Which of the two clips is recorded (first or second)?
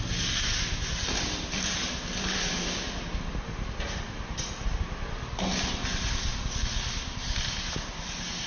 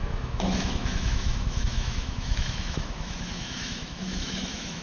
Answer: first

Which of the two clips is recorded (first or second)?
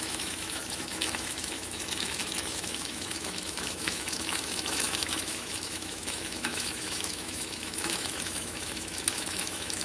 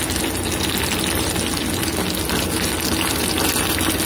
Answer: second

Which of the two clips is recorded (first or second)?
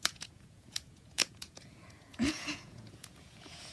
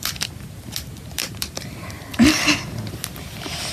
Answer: second